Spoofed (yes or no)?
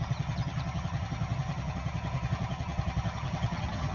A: yes